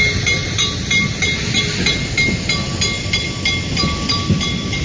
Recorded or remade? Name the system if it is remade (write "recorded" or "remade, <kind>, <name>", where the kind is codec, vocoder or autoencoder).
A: recorded